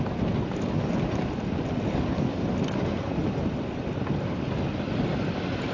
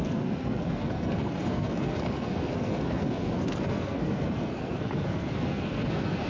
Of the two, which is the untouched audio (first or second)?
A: first